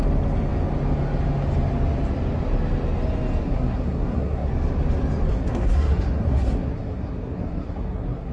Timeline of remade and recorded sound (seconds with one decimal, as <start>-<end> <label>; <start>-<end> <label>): 0.0-3.4 recorded; 3.4-4.5 remade; 4.5-5.3 recorded; 5.3-8.3 remade